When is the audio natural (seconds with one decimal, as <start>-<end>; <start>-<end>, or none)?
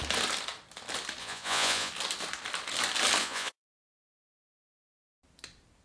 0.0-1.2; 1.9-3.2; 4.4-5.8